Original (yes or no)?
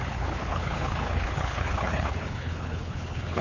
no